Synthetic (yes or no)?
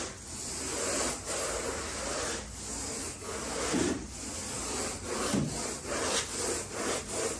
no